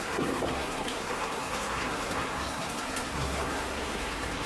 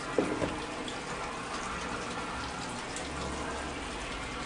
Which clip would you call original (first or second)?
second